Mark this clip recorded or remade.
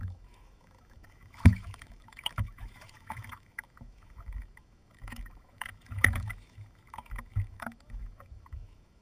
remade